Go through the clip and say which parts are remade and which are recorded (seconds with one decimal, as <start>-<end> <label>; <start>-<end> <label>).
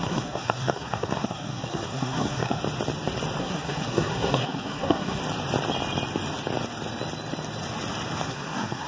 0.0-2.6 remade; 2.6-3.4 recorded; 3.4-5.2 remade; 5.2-8.3 recorded; 8.3-8.9 remade